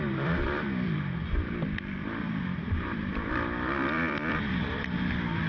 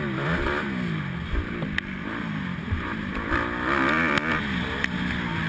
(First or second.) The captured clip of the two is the second